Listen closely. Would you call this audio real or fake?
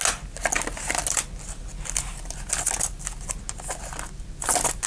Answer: real